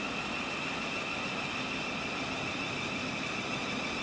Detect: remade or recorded recorded